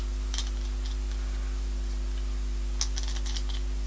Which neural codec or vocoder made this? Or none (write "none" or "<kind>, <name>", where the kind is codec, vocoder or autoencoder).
none